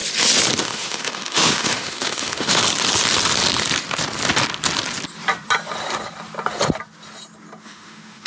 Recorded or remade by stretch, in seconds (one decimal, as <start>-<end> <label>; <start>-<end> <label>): 0.0-0.6 recorded; 0.6-2.6 remade; 2.6-7.6 recorded; 7.6-8.3 remade